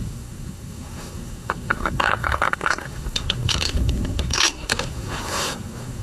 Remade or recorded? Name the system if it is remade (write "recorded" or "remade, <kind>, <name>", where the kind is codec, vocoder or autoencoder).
remade, codec, SNAC